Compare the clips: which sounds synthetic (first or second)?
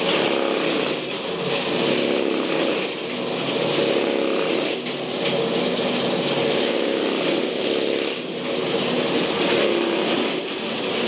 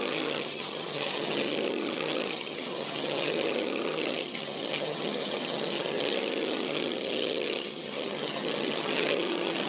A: second